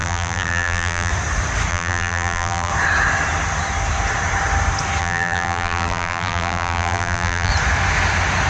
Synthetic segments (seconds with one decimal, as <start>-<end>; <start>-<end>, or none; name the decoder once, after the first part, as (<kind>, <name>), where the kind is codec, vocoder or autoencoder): 0.0-1.1 (vocoder, BigVGAN v2); 1.7-2.7; 5.0-7.5